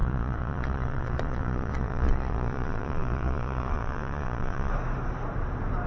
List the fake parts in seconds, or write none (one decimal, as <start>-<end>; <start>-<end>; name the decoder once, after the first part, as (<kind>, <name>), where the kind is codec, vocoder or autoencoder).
0.0-4.7 (vocoder, Vocos)